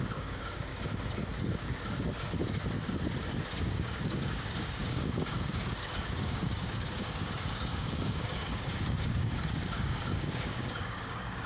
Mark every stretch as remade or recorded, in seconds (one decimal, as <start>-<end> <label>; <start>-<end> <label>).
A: 0.0-0.7 remade; 0.7-3.6 recorded; 3.6-11.5 remade